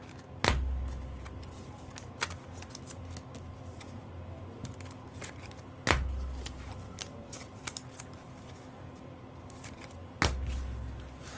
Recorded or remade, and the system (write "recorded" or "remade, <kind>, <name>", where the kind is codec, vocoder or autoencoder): recorded